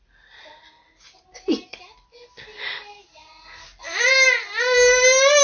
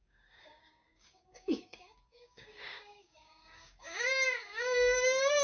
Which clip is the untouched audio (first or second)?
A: first